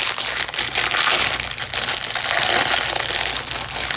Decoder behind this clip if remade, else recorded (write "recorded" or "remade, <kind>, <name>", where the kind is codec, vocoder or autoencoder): recorded